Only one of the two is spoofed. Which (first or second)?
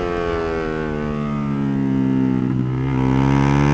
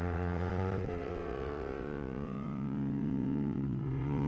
second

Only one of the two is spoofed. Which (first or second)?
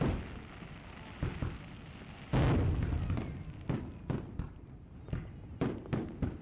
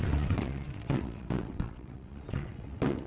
second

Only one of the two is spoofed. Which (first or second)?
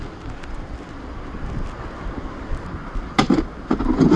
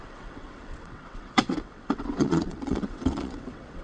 second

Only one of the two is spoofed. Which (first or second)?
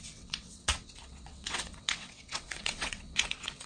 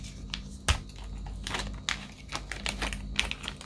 first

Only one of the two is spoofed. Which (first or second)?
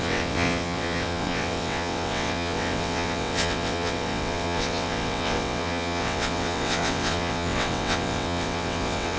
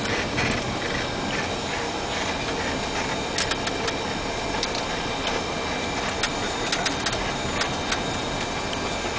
first